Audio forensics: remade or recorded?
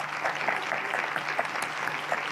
recorded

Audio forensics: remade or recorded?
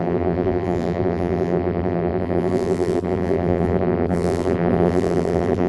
remade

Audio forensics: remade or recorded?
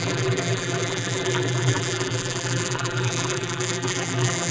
remade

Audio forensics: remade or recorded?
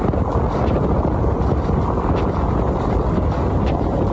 recorded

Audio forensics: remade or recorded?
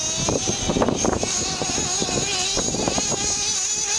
recorded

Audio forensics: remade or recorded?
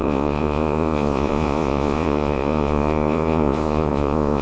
remade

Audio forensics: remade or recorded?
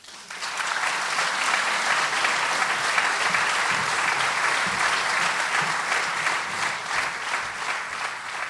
recorded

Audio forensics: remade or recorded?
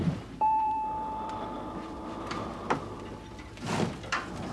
remade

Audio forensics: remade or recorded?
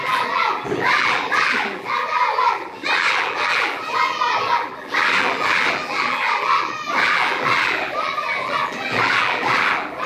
remade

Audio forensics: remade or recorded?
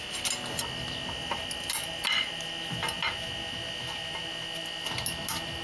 recorded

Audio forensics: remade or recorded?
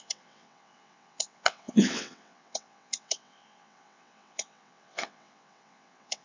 remade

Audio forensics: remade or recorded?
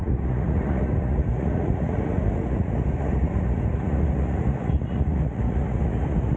remade